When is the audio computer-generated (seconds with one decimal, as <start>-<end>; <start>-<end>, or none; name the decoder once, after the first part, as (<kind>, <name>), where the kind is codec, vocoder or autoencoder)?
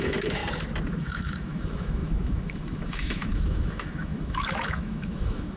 0.0-0.4 (autoencoder, DAC-VAE); 1.0-5.6